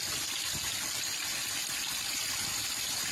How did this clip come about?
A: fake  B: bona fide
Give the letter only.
B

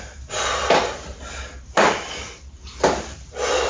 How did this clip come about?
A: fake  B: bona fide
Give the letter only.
B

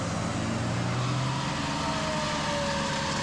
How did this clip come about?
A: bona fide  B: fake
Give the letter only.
A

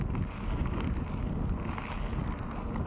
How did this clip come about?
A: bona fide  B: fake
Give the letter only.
A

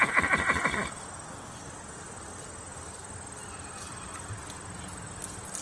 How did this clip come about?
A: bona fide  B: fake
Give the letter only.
A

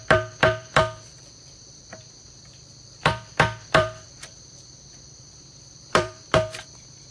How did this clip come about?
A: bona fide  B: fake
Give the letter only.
B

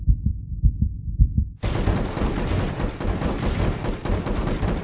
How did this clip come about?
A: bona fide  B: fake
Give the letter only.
A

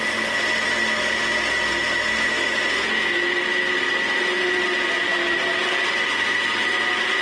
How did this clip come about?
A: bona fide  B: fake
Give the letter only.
A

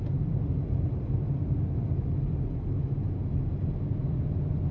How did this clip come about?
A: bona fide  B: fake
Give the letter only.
A